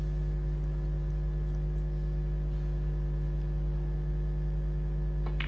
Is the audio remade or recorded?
recorded